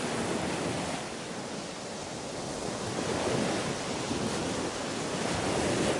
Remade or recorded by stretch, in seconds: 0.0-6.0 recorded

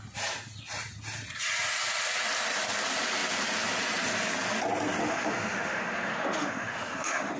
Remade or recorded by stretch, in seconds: 0.0-5.0 recorded; 5.0-7.4 remade

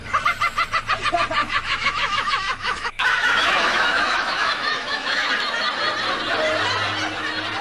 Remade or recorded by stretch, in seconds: 0.0-1.4 recorded; 1.4-5.3 remade; 5.3-7.6 recorded

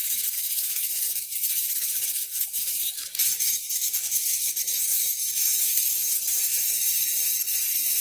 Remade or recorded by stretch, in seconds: 0.0-8.0 remade

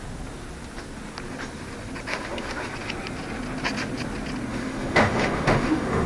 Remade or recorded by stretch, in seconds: 0.0-2.1 recorded; 2.1-2.7 remade; 2.7-4.5 recorded; 4.5-6.1 remade

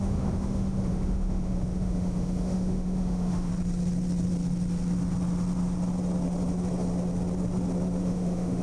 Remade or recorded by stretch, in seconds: 0.0-3.5 remade; 3.5-8.0 recorded; 8.0-8.6 remade